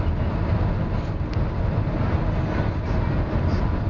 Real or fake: real